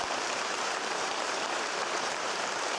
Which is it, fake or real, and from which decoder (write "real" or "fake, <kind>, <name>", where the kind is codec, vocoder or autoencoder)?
fake, vocoder, BigVGAN v2